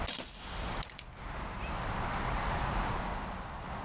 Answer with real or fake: real